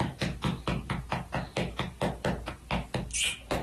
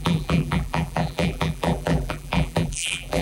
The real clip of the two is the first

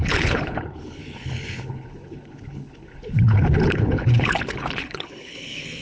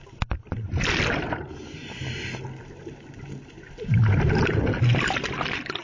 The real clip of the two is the second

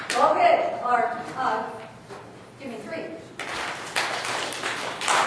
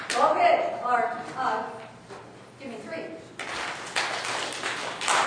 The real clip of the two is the second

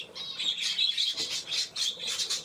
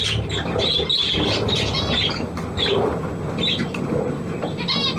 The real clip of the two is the second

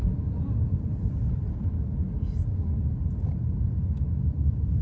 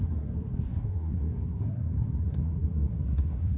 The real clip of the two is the first